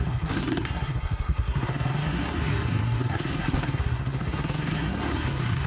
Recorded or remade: remade